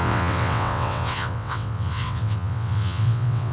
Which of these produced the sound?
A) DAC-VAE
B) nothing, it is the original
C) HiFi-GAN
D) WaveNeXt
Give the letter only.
D